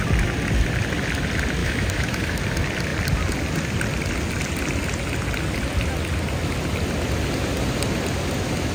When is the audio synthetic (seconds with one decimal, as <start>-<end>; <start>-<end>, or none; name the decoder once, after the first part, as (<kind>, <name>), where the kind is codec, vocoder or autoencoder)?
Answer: 1.6-2.4 (autoencoder, DAC-VAE)